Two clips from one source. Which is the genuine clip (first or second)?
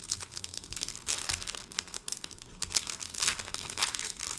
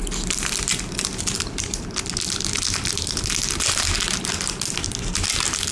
second